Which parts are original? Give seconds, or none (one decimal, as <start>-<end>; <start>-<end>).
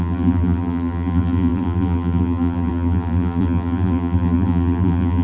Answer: none